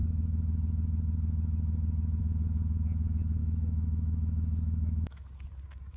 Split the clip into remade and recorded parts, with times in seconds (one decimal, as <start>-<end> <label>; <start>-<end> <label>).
0.0-3.4 recorded; 3.4-5.3 remade; 5.3-6.0 recorded

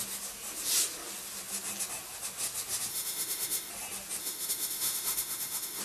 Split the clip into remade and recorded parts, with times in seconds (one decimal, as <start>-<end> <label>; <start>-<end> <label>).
0.0-2.9 recorded; 2.9-3.7 remade; 3.7-4.2 recorded; 4.2-5.8 remade

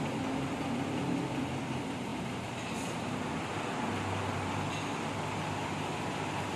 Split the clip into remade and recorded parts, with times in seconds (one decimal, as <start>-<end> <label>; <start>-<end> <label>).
0.0-6.6 recorded

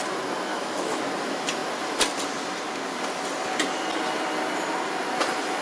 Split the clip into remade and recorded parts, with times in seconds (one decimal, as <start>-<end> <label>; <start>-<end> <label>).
0.0-0.5 recorded; 0.5-1.0 remade; 1.0-5.6 recorded

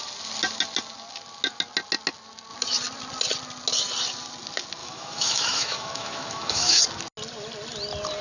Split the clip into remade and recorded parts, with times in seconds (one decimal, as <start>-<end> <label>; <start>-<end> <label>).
0.0-4.8 recorded; 4.8-6.8 remade; 6.8-8.2 recorded

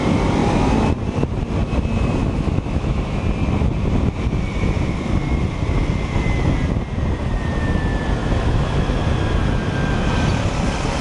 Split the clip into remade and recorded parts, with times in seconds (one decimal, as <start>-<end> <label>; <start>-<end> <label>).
0.0-2.2 recorded; 2.2-3.2 remade; 3.2-8.2 recorded; 8.2-8.9 remade; 8.9-11.0 recorded

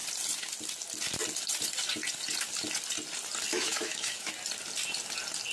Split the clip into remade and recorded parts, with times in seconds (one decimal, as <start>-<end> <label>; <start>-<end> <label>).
0.0-3.5 recorded; 3.5-4.3 remade; 4.3-5.5 recorded

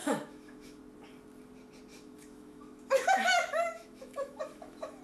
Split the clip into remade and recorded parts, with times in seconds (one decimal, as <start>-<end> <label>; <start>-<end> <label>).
0.0-0.8 remade; 0.8-1.9 recorded; 1.9-5.0 remade